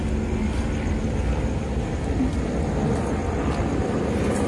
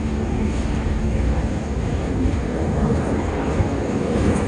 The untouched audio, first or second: first